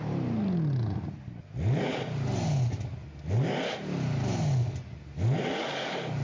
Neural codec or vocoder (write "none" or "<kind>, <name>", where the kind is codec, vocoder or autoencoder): none